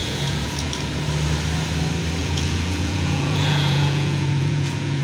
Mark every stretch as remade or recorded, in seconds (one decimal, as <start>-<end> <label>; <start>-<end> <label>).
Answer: 0.0-0.7 remade; 0.7-2.2 recorded; 2.2-5.0 remade